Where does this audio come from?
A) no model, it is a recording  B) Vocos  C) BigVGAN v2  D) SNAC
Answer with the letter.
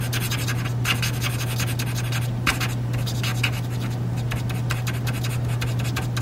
A